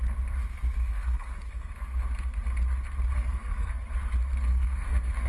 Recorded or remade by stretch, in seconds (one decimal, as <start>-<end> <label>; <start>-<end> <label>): 0.0-0.8 recorded; 0.8-1.7 remade; 1.7-3.1 recorded; 3.1-3.8 remade; 3.8-4.5 recorded; 4.5-5.3 remade